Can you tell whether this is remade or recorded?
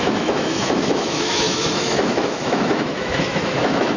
remade